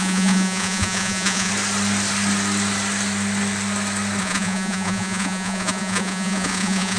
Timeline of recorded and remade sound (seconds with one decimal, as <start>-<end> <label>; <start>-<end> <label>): 0.0-1.5 remade; 1.5-4.2 recorded; 4.2-7.0 remade